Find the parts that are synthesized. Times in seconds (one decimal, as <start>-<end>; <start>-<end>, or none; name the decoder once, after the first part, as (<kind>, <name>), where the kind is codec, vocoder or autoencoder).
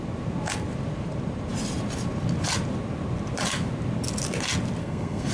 4.8-5.3 (codec, SNAC)